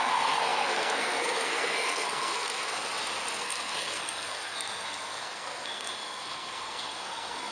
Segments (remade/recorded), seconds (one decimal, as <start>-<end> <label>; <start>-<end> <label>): 0.0-2.8 remade; 2.8-3.3 recorded; 3.3-7.5 remade